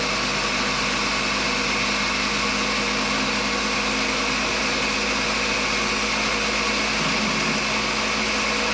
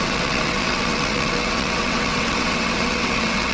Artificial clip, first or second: second